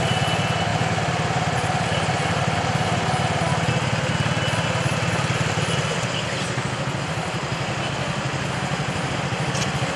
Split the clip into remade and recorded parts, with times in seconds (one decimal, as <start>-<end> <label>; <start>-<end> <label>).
0.0-10.0 recorded